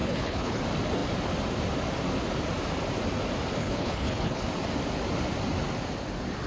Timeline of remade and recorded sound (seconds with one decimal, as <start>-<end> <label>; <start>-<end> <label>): 0.0-0.6 remade; 0.6-3.6 recorded; 3.6-4.4 remade; 4.4-6.5 recorded